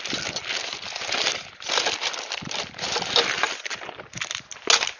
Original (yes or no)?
yes